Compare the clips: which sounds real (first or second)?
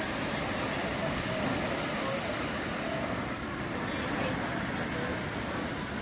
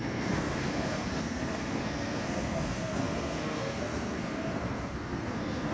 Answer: first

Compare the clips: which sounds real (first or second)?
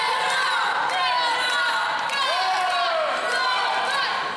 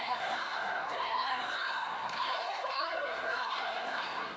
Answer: first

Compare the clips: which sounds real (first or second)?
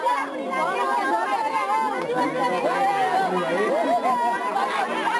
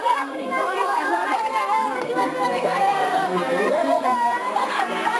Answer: first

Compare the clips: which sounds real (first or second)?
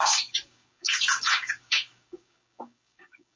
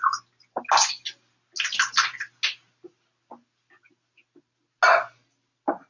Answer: second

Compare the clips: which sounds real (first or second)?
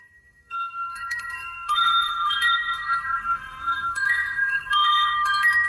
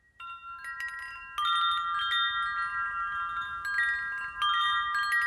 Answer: second